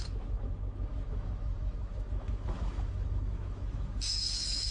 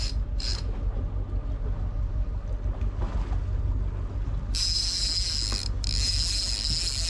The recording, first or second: second